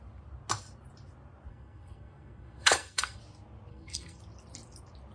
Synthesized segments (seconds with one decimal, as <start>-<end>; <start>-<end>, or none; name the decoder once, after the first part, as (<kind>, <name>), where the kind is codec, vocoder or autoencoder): 1.5-3.2 (codec, SNAC); 3.7-4.2